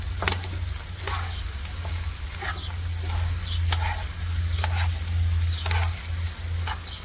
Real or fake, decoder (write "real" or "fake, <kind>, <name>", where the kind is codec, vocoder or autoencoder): real